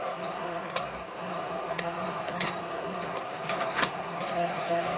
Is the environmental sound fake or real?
fake